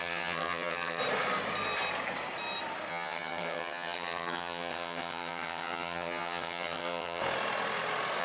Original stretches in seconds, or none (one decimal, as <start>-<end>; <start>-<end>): 1.0-2.9; 7.2-8.2